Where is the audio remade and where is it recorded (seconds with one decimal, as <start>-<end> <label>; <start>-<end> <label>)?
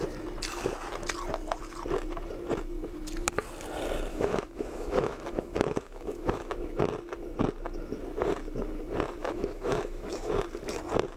0.0-4.1 recorded; 4.1-6.5 remade; 6.5-9.2 recorded; 9.2-10.3 remade; 10.3-11.2 recorded